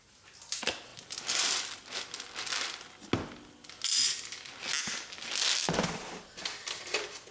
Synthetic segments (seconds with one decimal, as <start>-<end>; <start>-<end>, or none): none